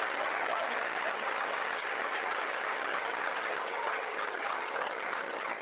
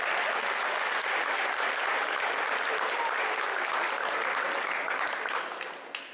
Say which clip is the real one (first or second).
second